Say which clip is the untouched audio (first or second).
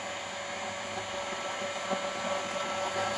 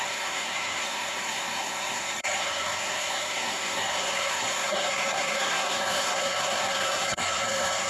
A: first